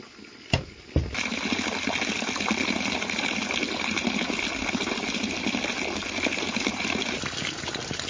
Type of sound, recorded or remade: recorded